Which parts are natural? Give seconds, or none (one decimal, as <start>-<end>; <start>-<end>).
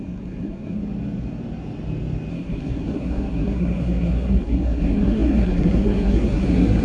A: 0.8-2.3